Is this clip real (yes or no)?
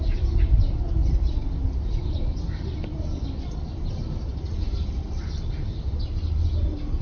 yes